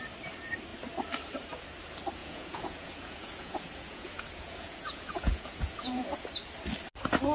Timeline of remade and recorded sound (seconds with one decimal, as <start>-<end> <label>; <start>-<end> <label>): 0.0-2.2 recorded; 2.2-6.3 remade; 6.3-7.3 recorded